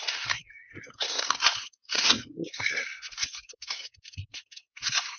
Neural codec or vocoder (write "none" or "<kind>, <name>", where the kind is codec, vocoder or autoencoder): codec, SNAC